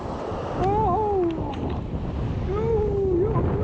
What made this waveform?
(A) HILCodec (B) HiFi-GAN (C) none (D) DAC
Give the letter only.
C